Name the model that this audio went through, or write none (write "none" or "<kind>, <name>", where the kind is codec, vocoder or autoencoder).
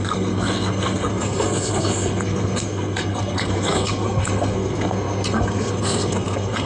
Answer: codec, SNAC